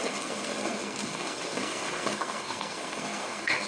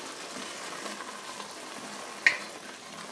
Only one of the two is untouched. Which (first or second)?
second